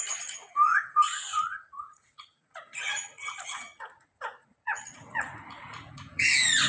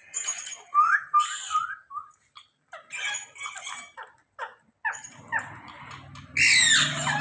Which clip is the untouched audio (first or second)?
second